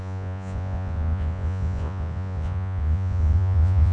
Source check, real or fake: fake